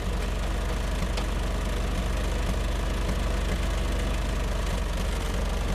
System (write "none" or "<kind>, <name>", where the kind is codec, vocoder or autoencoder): none